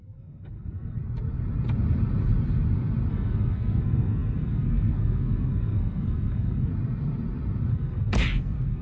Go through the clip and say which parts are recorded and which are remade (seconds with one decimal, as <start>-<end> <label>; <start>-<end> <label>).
0.0-1.0 remade; 1.0-3.1 recorded; 3.1-6.7 remade; 6.7-7.7 recorded; 7.7-8.8 remade